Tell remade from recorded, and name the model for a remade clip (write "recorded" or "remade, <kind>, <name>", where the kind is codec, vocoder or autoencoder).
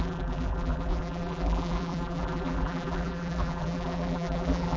remade, vocoder, BigVGAN v2